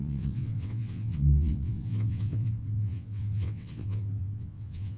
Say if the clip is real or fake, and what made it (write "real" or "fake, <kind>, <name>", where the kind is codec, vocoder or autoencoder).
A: fake, vocoder, WaveNeXt